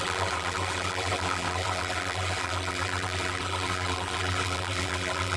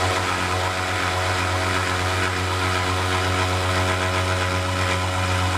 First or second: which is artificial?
first